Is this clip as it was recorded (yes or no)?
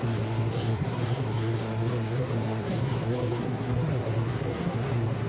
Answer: no